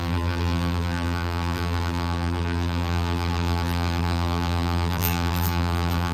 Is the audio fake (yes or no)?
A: yes